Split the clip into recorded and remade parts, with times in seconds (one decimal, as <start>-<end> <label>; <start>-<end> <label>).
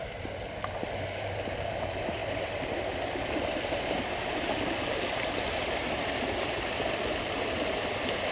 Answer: 0.0-2.2 remade; 2.2-6.5 recorded; 6.5-8.3 remade